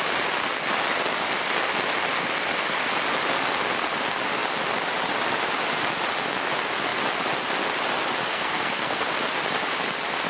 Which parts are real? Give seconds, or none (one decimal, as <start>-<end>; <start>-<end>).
0.0-8.3; 9.0-10.3